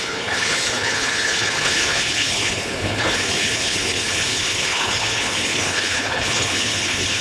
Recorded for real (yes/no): no